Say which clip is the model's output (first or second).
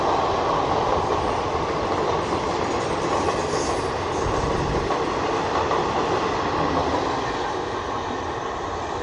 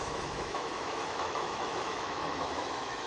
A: second